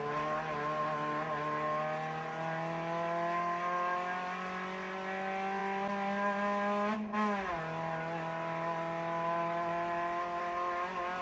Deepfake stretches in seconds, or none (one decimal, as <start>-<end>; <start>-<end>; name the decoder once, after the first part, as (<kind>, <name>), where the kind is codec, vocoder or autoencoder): none